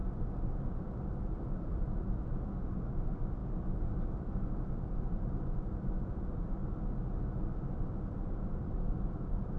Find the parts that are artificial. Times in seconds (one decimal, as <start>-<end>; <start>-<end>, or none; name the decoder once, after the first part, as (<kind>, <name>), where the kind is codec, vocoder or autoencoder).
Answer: 0.8-6.6 (vocoder, BigVGAN v2); 8.3-9.6